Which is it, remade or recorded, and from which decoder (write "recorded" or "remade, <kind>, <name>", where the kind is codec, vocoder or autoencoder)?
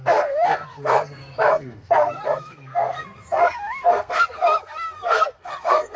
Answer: remade, codec, SNAC